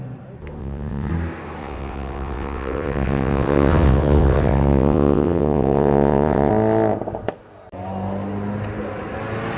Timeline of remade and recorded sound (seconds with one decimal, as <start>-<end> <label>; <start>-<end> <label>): 0.0-0.6 recorded; 0.6-1.1 remade; 1.1-1.6 recorded; 1.6-6.5 remade; 6.5-9.6 recorded